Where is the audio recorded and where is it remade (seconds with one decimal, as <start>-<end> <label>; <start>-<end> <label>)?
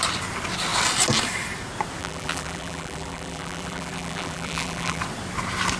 0.0-2.0 recorded; 2.0-5.0 remade; 5.0-5.8 recorded